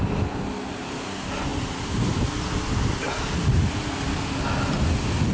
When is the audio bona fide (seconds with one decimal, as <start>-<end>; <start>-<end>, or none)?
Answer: 0.0-5.3